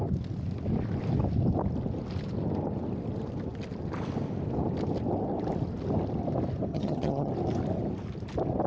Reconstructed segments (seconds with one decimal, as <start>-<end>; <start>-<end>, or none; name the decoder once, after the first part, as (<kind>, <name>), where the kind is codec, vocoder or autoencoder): 6.7-7.3 (vocoder, HiFi-GAN)